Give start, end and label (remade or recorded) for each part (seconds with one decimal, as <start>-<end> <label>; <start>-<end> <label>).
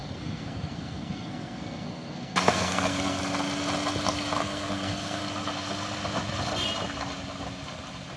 0.0-3.2 remade; 3.2-4.4 recorded; 4.4-5.2 remade; 5.2-8.2 recorded